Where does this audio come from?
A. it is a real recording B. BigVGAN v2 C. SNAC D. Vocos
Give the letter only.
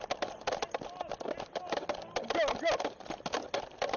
A